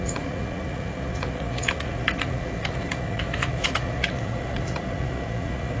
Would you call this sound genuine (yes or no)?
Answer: no